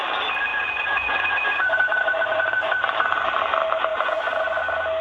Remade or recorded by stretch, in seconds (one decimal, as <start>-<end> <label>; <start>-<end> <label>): 0.0-0.5 recorded; 0.5-3.0 remade; 3.0-3.9 recorded; 3.9-4.6 remade; 4.6-5.0 recorded